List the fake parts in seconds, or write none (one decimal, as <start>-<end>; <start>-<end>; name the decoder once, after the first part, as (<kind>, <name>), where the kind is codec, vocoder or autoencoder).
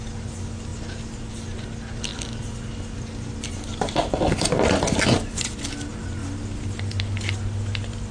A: none